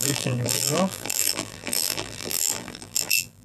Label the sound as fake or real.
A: fake